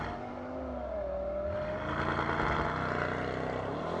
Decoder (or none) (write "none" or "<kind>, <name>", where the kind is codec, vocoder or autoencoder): none